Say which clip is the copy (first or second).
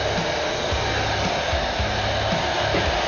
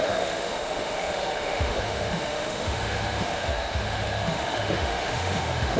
second